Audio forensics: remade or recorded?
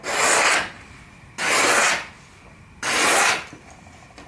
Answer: recorded